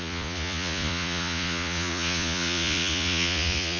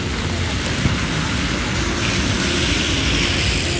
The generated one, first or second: first